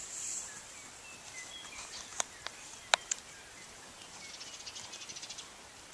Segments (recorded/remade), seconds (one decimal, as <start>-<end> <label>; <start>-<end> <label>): 0.0-5.9 recorded